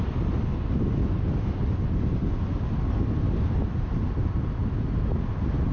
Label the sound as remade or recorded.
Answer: recorded